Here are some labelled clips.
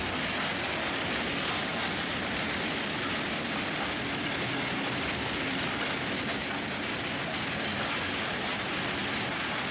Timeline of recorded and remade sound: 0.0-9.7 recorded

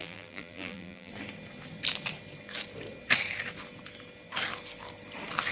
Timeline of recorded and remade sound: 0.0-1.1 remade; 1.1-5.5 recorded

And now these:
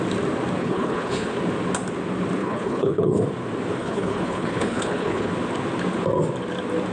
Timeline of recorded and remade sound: 0.0-0.6 recorded; 0.6-1.4 remade; 1.4-2.4 recorded; 2.4-3.2 remade; 3.2-3.8 recorded; 3.8-5.3 remade; 5.3-6.9 recorded

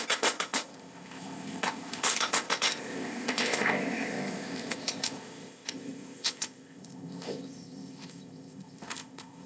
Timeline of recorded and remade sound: 0.0-9.5 remade

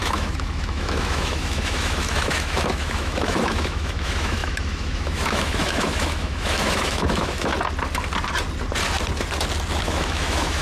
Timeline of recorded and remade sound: 0.0-7.5 remade; 7.5-9.8 recorded; 9.8-10.6 remade

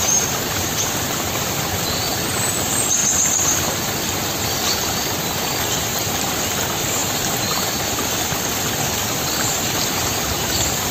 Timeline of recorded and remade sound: 0.0-10.9 recorded

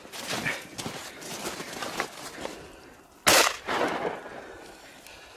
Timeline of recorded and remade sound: 0.0-5.4 recorded